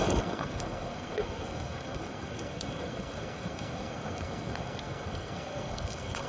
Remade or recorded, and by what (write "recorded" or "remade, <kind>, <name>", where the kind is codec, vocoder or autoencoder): remade, codec, SNAC